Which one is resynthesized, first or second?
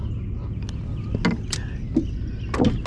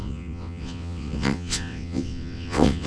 second